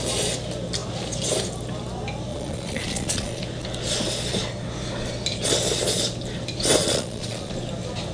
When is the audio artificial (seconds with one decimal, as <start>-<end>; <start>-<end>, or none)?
2.3-3.4; 6.8-7.5